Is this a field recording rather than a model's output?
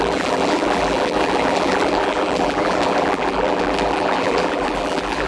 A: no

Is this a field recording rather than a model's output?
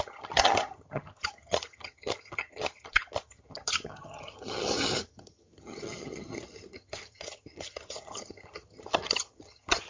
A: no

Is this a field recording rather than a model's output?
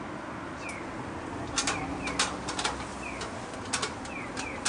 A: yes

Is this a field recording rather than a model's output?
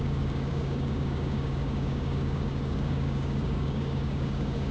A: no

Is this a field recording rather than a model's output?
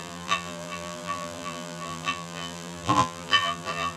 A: no